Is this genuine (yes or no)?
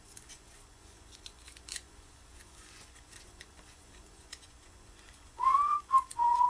no